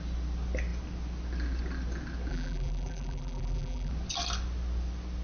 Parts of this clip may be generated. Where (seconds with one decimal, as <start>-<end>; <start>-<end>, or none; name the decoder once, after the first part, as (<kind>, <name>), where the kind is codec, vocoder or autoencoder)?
2.3-3.9 (vocoder, BigVGAN v2)